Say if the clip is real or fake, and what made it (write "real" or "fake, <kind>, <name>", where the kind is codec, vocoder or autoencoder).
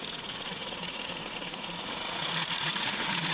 fake, vocoder, Vocos